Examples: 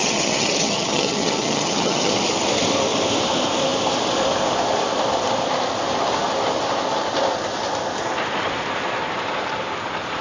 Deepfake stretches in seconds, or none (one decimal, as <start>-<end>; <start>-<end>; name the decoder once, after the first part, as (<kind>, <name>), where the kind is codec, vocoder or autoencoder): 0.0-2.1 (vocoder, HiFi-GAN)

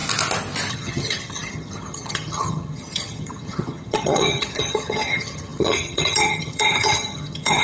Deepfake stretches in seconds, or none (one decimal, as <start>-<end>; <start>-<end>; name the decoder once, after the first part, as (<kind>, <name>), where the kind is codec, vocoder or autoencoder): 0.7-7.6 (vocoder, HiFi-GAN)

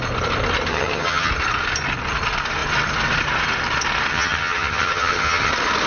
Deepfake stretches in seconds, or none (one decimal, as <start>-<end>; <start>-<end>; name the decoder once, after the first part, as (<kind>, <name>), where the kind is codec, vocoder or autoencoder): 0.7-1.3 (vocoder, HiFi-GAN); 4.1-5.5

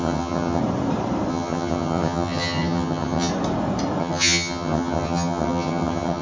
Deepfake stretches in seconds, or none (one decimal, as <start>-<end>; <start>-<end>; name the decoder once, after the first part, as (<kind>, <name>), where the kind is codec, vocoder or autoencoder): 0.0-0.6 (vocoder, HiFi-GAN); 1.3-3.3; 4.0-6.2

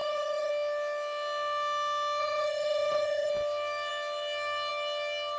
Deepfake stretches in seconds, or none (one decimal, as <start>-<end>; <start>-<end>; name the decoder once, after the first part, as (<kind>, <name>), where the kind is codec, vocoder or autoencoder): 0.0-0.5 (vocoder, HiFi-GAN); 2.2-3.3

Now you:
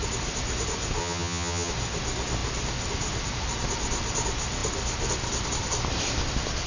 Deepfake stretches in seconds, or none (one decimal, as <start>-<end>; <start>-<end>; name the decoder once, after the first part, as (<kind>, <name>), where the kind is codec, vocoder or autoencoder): 1.0-1.7 (vocoder, HiFi-GAN)

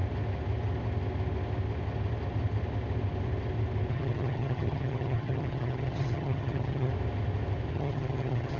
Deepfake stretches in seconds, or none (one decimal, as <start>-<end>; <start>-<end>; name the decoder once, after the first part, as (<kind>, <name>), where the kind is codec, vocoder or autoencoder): 3.9-6.9 (vocoder, HiFi-GAN); 7.7-8.6